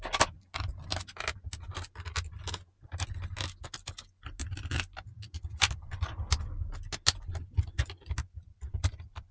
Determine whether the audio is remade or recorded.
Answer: recorded